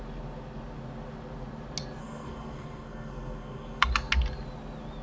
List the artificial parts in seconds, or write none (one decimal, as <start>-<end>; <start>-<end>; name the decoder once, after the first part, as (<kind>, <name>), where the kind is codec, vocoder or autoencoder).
2.0-3.8 (codec, SNAC)